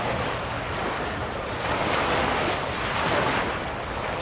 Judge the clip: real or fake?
real